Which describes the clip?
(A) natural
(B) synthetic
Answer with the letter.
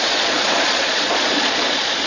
B